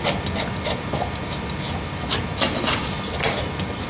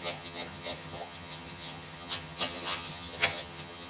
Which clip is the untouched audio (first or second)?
first